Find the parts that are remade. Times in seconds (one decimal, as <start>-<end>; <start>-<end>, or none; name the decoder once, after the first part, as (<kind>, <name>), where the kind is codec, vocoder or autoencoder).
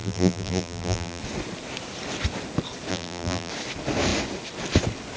0.0-1.2 (vocoder, BigVGAN v2); 2.9-3.5